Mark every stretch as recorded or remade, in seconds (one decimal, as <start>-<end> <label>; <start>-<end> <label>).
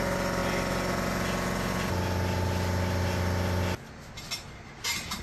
0.0-5.2 recorded